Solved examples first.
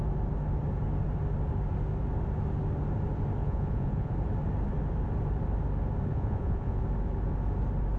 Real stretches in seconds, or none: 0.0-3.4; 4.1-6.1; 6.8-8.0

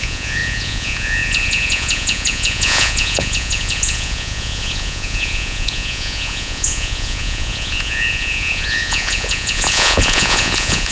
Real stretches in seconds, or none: none

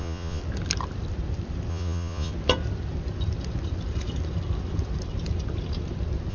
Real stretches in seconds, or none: 0.4-1.7; 2.3-6.3

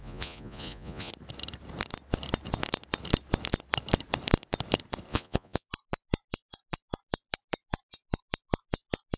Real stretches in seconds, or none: 1.1-5.1; 5.7-9.2

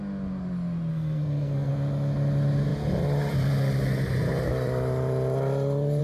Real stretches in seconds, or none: 0.0-0.9; 1.7-6.0

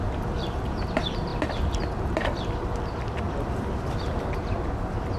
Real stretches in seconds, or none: none

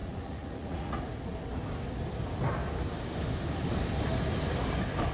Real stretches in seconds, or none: 1.0-5.1

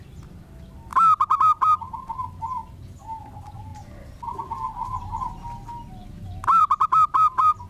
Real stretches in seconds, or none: 0.0-7.7